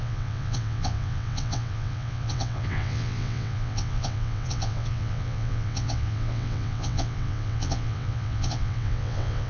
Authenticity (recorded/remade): remade